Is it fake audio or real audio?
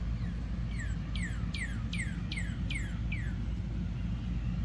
real